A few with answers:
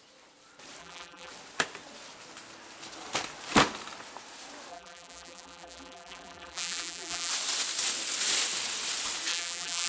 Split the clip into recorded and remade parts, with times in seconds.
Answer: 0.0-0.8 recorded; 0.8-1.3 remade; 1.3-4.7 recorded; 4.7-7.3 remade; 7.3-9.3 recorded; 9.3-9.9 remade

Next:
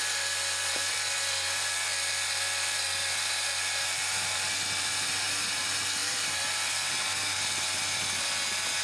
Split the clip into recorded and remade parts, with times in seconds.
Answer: 0.0-6.0 recorded; 6.0-6.9 remade; 6.9-8.8 recorded

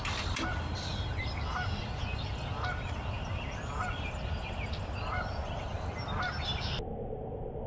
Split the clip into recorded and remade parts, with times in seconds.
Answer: 0.0-5.7 remade; 5.7-7.7 recorded